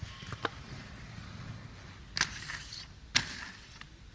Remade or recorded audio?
recorded